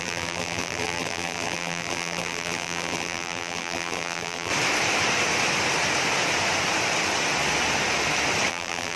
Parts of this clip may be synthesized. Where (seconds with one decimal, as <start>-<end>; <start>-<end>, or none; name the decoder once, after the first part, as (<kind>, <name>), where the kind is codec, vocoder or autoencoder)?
0.0-4.5 (vocoder, BigVGAN v2); 8.5-9.0